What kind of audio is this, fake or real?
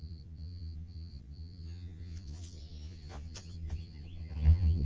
fake